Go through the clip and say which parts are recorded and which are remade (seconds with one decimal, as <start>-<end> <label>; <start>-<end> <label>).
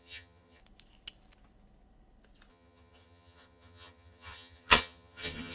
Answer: 0.0-0.6 remade; 0.6-2.5 recorded; 2.5-5.5 remade